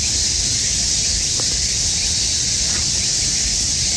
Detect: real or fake real